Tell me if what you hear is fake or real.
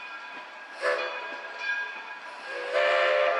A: real